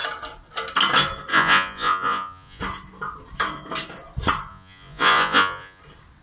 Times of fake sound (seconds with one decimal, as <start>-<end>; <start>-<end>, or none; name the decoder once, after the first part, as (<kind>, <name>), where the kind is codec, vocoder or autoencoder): 1.3-2.6 (vocoder, Vocos); 4.5-5.8